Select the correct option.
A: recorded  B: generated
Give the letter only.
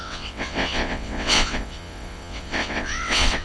B